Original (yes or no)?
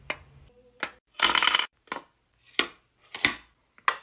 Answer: yes